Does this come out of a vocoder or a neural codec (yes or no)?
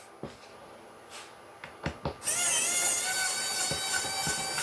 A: no